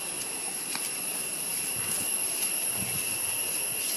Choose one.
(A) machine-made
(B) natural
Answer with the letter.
B